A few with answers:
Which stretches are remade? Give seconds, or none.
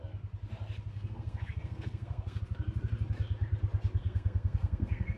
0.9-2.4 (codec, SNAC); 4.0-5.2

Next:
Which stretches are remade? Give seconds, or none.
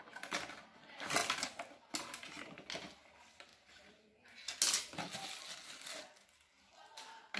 none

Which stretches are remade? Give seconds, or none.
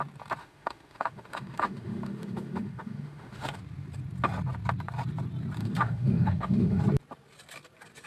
0.4-3.6 (autoencoder, DAC-VAE); 5.6-6.8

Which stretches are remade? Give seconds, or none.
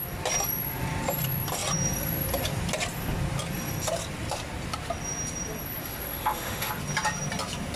5.8-6.7 (autoencoder, DAC-VAE)